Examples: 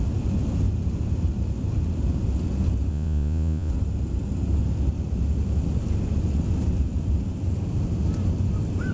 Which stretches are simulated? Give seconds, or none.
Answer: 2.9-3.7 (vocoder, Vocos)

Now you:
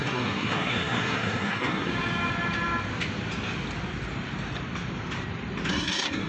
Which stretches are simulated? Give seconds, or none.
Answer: 0.0-1.9 (codec, SNAC); 5.7-6.3

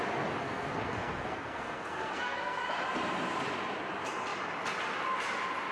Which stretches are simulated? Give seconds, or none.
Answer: 0.4-2.6 (codec, SNAC)